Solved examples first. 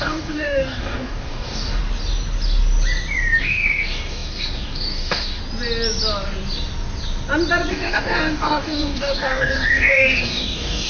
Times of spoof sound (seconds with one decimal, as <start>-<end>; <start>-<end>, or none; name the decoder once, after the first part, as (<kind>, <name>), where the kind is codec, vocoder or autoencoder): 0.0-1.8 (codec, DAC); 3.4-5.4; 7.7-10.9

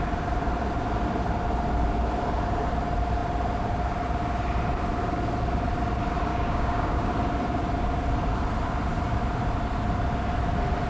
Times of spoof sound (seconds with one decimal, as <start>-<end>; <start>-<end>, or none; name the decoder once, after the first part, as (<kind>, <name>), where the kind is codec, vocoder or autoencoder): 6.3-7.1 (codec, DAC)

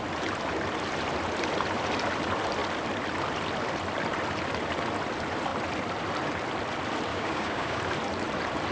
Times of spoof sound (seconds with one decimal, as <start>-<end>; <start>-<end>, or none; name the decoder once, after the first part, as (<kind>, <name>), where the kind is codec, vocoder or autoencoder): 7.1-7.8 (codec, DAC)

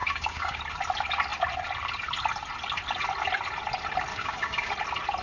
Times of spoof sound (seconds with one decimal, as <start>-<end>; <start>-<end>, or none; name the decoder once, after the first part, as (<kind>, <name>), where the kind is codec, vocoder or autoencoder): 0.0-0.6 (codec, DAC); 4.1-4.7

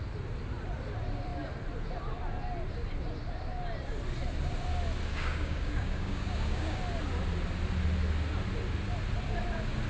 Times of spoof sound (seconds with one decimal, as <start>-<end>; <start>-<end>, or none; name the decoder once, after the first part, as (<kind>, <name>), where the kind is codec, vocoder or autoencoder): 5.1-6.8 (codec, DAC)